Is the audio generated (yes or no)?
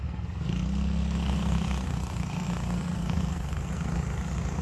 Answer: yes